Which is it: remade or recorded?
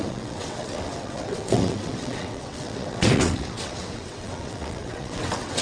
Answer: remade